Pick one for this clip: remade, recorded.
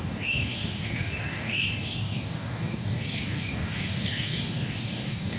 remade